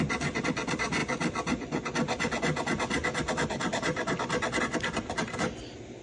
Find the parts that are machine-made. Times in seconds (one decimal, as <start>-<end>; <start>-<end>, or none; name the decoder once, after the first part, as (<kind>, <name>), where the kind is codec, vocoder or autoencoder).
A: none